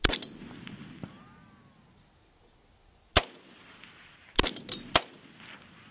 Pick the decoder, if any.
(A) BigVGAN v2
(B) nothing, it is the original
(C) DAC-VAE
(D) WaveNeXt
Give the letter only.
B